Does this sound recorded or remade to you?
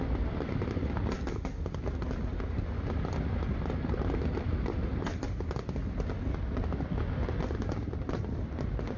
recorded